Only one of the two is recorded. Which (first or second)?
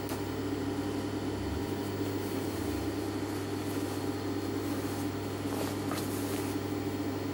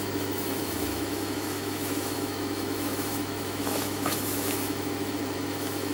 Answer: first